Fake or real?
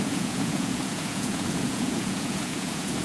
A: fake